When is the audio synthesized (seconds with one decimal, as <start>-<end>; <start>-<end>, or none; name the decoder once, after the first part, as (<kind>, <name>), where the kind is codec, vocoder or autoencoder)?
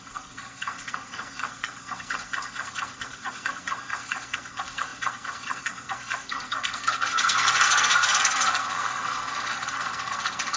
0.0-10.6 (codec, SNAC)